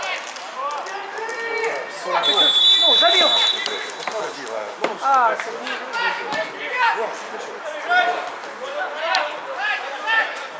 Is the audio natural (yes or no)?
yes